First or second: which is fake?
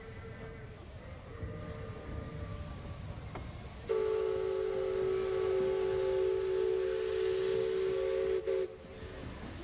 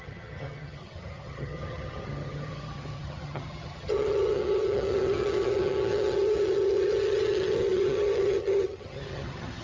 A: second